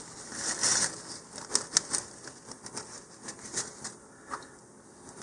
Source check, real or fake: real